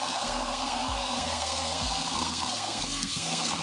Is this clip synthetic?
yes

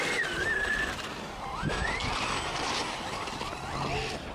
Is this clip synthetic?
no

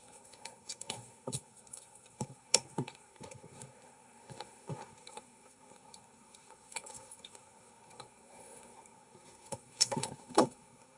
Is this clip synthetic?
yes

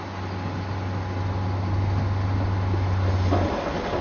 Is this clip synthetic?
no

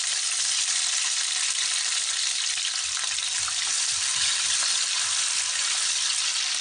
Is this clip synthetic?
no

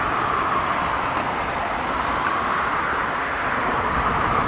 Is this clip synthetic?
no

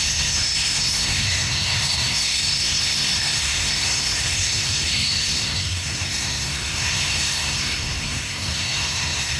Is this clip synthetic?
yes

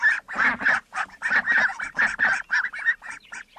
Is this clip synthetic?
no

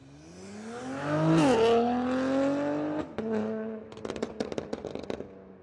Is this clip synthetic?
no